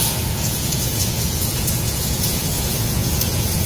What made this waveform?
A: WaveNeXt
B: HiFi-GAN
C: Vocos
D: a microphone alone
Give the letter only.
C